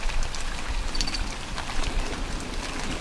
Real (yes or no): no